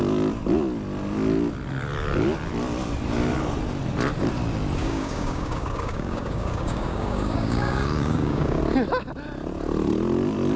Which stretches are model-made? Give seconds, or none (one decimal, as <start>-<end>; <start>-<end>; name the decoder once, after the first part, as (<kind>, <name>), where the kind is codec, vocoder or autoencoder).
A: 4.8-8.6 (codec, DAC)